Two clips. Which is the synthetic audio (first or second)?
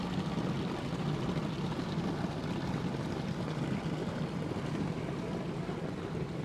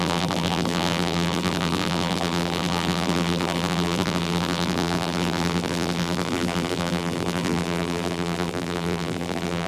second